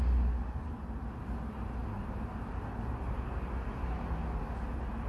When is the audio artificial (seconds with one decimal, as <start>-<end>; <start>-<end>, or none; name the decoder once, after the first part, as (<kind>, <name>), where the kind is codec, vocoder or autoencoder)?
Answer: none